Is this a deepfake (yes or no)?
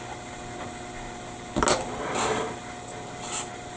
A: no